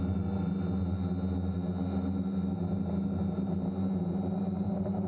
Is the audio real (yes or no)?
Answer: yes